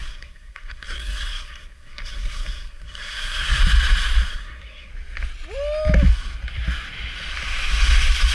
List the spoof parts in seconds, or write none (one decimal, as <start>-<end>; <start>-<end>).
0.0-3.6; 4.3-4.9